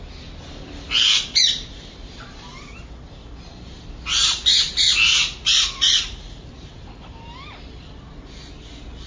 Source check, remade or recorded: recorded